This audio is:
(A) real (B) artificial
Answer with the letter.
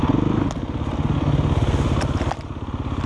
A